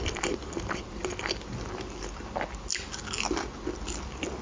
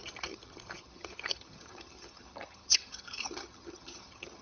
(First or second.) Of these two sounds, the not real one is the second